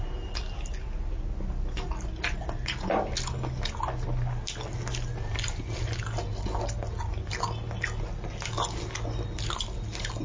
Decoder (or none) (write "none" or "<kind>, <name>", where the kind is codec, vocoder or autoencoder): none